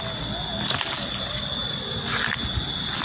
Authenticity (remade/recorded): recorded